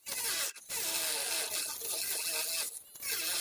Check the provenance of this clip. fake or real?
real